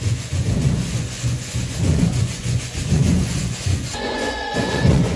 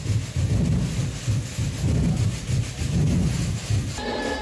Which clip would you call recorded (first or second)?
second